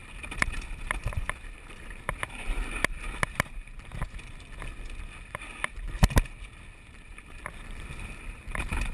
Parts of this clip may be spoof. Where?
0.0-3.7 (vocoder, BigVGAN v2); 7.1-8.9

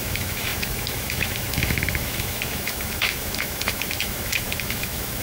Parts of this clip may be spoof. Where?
0.0-5.2 (autoencoder, DAC-VAE)

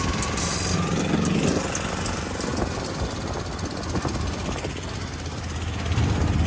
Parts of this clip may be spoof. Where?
none

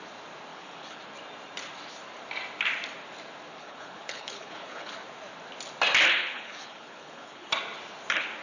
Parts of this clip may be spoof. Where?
0.5-1.0 (codec, HILCodec); 3.5-4.9; 6.2-7.5